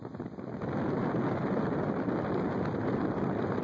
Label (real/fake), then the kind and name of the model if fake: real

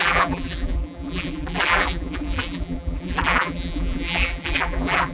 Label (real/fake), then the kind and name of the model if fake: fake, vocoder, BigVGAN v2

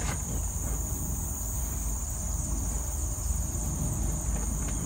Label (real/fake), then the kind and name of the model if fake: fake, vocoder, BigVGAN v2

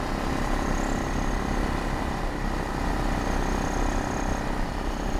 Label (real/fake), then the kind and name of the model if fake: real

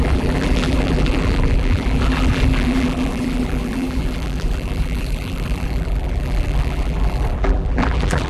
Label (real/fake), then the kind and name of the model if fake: fake, vocoder, BigVGAN v2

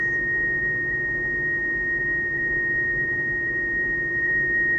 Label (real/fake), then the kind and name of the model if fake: fake, vocoder, BigVGAN v2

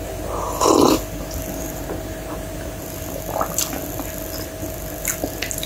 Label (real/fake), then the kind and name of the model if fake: real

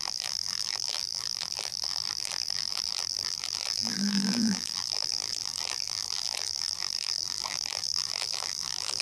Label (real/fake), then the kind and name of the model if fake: fake, vocoder, BigVGAN v2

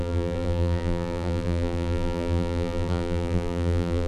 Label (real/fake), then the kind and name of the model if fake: fake, vocoder, BigVGAN v2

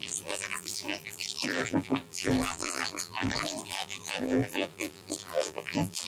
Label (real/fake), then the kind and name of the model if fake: fake, vocoder, BigVGAN v2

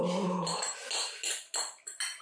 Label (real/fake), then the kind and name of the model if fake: real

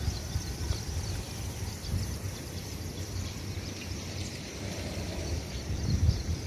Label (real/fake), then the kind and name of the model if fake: fake, vocoder, BigVGAN v2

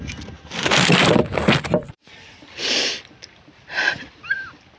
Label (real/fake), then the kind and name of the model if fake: fake, vocoder, BigVGAN v2